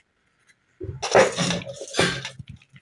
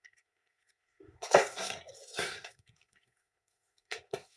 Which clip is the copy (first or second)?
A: second